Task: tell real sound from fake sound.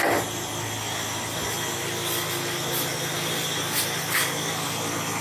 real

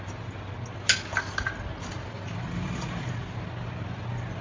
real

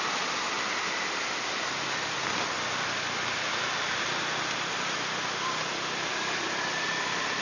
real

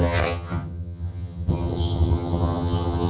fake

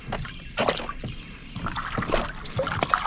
real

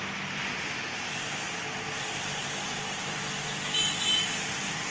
real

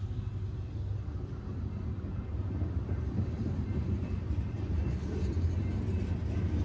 real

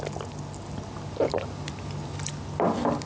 real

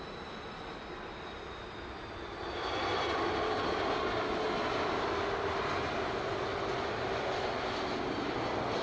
real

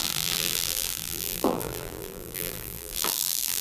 fake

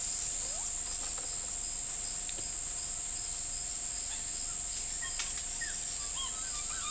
real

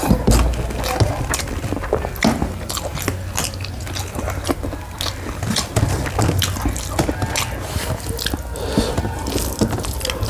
real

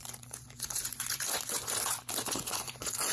fake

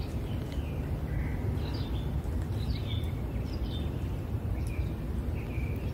real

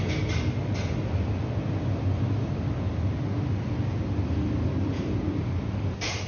real